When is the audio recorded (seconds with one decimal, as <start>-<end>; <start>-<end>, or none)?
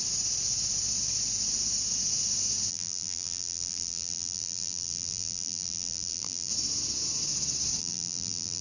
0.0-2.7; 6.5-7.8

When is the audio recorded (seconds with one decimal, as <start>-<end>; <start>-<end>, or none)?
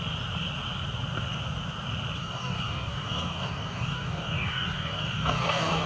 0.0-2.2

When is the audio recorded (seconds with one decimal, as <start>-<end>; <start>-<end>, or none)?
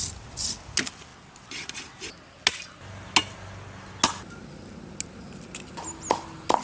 0.0-6.6